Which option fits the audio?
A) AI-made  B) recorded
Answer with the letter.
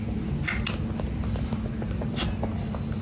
B